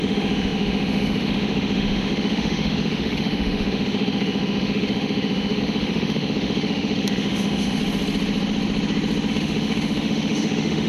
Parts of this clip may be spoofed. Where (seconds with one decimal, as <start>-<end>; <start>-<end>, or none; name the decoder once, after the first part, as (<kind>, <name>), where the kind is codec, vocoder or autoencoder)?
0.0-7.8 (autoencoder, DAC-VAE); 9.3-10.9